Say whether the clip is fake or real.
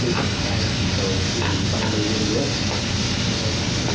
real